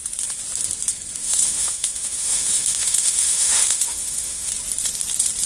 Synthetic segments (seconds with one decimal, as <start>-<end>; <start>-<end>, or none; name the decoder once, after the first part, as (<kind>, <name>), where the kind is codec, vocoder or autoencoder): 1.2-4.5 (autoencoder, DAC-VAE)